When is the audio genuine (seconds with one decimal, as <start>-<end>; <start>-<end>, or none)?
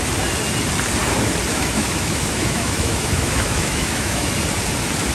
0.0-1.5; 4.3-5.1